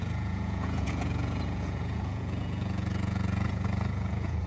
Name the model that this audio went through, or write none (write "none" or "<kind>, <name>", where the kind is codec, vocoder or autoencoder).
vocoder, Vocos